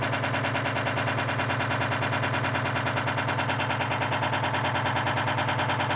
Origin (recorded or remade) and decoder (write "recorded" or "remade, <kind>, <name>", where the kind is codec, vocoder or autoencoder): recorded